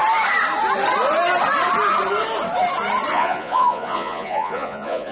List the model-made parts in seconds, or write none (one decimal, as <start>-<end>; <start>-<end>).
3.1-5.1